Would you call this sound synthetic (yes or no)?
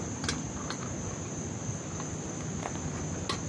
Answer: no